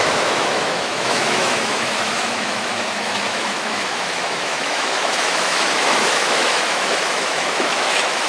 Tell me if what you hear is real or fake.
fake